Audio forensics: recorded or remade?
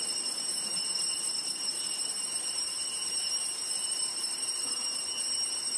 remade